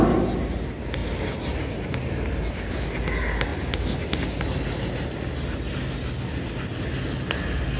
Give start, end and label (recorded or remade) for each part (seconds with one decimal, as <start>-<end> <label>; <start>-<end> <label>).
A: 0.0-7.8 recorded